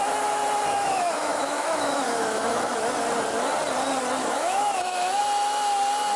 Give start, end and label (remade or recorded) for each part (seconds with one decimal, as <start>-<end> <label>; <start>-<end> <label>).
0.0-0.7 recorded; 0.7-2.8 remade; 2.8-4.2 recorded; 4.2-5.2 remade; 5.2-6.2 recorded